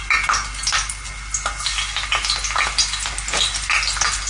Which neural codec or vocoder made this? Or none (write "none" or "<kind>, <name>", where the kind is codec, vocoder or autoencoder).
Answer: none